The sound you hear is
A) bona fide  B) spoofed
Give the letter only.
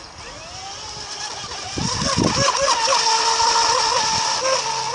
A